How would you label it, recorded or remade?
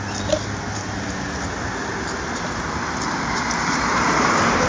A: recorded